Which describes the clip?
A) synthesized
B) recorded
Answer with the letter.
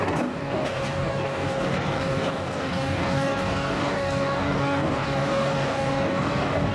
A